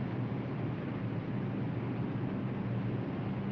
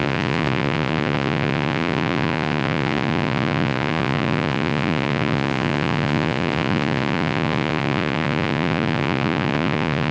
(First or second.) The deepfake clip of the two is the second